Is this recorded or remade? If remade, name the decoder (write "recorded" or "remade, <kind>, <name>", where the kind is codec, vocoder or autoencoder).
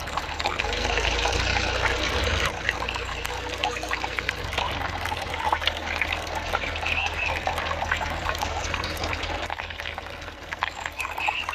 remade, codec, SNAC